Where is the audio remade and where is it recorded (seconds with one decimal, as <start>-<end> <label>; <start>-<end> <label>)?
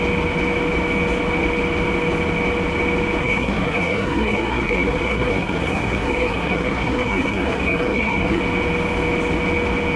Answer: 0.0-3.2 recorded; 3.2-8.4 remade; 8.4-10.0 recorded